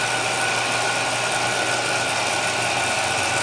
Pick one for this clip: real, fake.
real